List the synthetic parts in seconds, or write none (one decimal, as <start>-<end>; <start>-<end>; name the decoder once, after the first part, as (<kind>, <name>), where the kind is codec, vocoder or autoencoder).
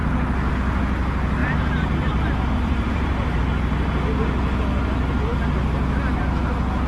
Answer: 1.4-3.4 (vocoder, BigVGAN v2)